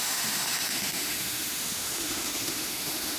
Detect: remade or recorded remade